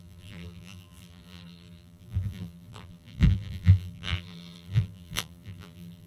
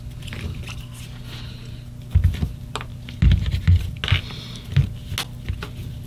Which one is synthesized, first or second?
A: first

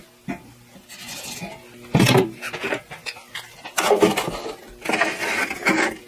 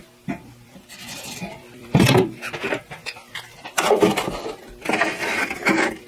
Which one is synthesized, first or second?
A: second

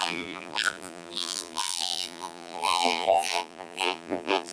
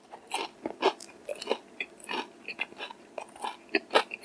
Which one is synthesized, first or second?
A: first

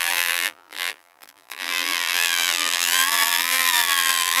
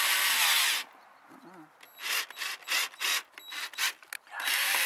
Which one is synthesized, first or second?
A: first